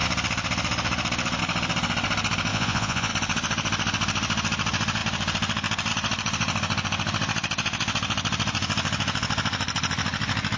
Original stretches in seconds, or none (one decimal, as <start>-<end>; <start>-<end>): 0.0-2.5; 3.1-10.6